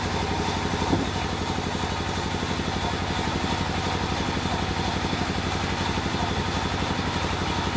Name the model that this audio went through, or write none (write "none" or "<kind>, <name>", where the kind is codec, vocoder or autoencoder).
none